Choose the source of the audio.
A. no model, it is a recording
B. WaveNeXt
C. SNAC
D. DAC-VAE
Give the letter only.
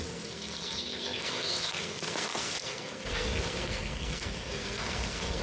C